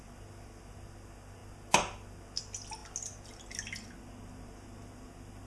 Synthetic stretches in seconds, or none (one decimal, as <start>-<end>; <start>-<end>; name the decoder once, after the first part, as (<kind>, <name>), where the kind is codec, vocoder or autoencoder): none

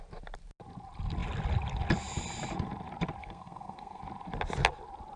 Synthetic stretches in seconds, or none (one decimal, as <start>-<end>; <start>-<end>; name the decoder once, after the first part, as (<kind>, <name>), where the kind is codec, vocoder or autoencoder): 3.2-4.0 (codec, SNAC)